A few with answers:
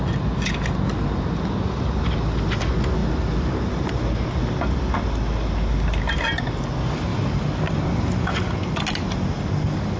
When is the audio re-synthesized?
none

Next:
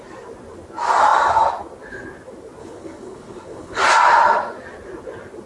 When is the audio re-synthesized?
2.6-3.8 (codec, HILCodec)

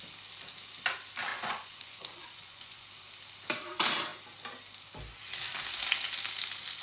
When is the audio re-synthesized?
1.3-2.9 (vocoder, Vocos)

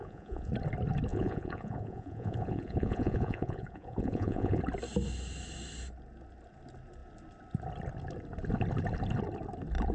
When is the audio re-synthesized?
0.0-0.5 (vocoder, Vocos); 1.1-4.6

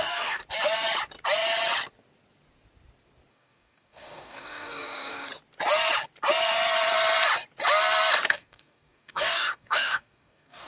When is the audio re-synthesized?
0.0-0.4 (codec, DAC); 3.3-5.3; 8.3-10.7

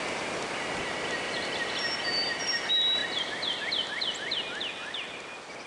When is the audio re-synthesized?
none

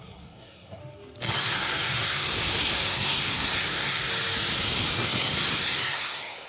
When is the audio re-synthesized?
0.0-0.8 (codec, SNAC); 1.4-4.1; 4.9-6.5

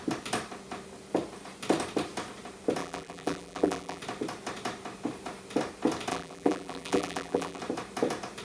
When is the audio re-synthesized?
2.8-4.0 (vocoder, BigVGAN v2); 6.1-7.6